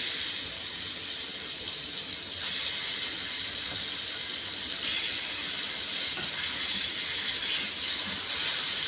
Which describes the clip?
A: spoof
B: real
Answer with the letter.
B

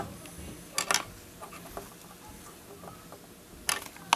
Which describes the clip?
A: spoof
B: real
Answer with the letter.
B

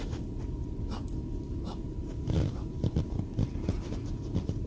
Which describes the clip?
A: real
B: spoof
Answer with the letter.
B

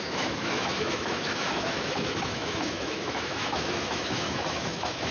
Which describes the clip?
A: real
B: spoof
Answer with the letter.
B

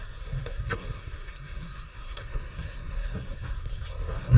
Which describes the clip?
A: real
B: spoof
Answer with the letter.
B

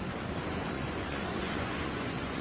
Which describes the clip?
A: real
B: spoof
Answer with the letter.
B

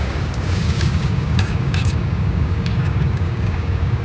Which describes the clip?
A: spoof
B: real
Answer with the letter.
A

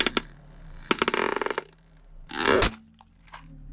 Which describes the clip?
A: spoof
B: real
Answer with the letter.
B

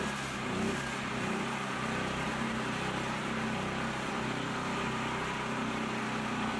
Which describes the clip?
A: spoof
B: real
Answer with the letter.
B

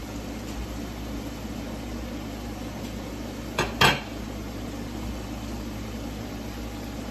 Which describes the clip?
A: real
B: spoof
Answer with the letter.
A